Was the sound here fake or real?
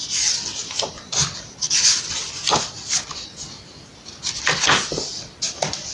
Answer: real